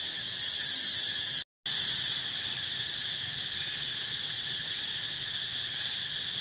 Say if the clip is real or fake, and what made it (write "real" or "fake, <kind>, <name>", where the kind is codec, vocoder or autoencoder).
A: real